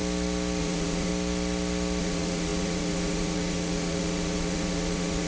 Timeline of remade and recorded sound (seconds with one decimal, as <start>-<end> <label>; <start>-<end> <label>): 0.0-0.6 recorded; 0.6-1.1 remade; 1.1-2.0 recorded; 2.0-5.3 remade